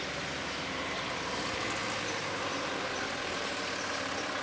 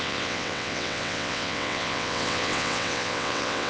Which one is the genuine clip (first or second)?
first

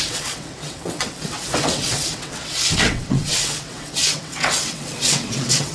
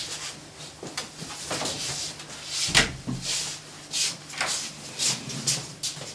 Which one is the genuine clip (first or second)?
second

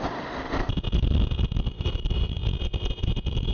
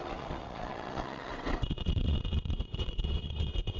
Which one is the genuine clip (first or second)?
first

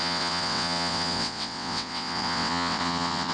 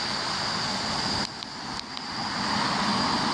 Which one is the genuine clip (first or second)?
second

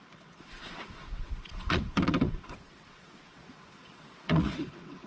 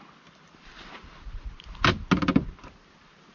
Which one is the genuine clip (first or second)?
second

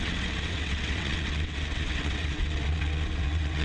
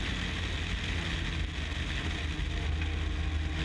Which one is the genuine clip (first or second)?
second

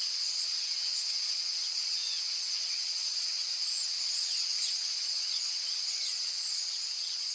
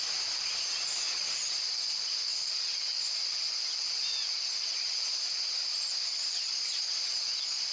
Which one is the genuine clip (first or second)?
second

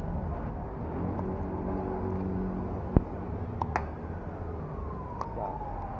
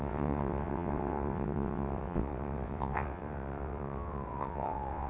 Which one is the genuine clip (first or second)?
first